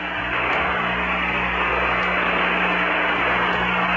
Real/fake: real